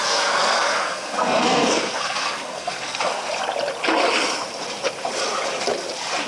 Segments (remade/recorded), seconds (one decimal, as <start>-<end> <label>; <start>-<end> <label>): 0.0-3.3 remade; 3.3-6.3 recorded